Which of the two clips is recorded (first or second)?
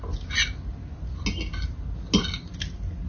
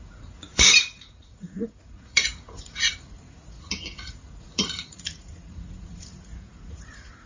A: first